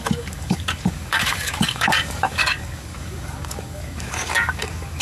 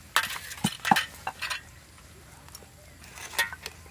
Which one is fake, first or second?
first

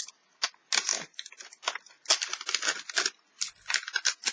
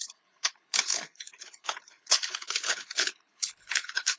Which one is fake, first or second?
second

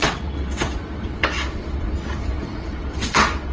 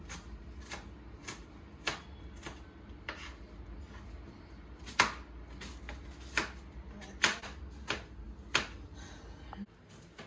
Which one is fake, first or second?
first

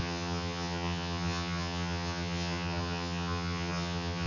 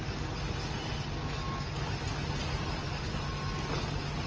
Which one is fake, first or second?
first